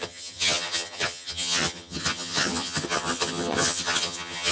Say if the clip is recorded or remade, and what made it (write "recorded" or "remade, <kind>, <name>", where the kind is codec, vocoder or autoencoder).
remade, vocoder, HiFi-GAN